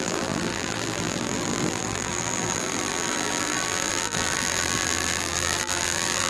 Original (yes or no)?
no